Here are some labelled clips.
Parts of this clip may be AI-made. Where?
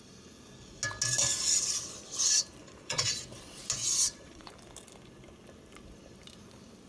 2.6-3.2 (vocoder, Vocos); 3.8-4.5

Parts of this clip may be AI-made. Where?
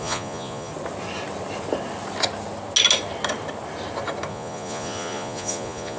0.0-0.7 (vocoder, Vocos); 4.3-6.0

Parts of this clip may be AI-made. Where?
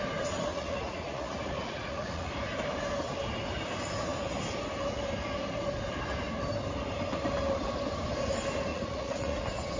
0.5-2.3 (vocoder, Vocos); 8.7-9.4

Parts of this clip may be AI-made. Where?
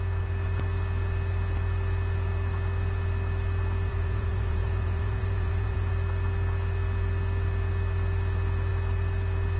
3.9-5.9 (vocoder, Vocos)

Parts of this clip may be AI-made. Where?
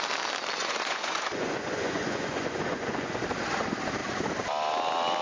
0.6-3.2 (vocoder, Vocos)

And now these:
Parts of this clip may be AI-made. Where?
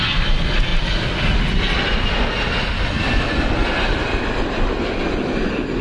none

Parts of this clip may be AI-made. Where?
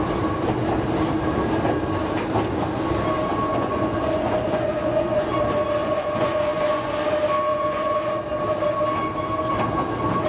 3.3-5.3 (vocoder, Vocos); 5.8-6.9; 7.5-8.2